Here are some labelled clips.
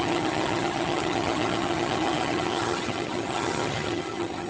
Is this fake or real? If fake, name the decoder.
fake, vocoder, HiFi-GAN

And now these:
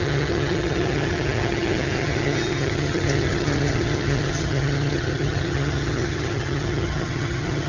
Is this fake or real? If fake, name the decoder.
fake, vocoder, HiFi-GAN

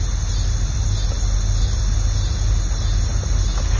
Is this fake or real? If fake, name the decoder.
real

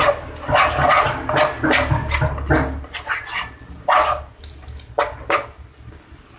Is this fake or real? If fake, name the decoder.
real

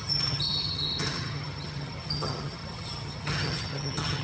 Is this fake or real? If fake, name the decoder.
fake, vocoder, HiFi-GAN